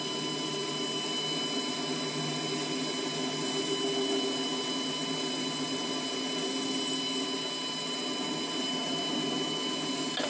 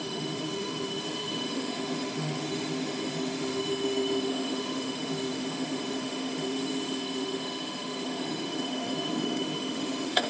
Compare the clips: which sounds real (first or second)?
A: first